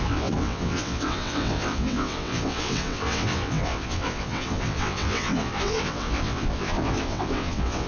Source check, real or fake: fake